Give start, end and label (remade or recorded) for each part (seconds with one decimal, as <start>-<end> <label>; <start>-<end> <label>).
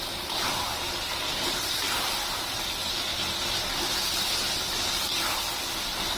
0.0-6.2 recorded